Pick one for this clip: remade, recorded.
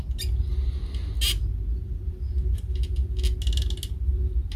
recorded